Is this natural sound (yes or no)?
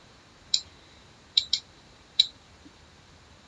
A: no